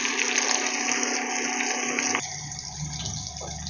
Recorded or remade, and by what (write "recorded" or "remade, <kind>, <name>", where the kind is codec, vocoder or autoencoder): recorded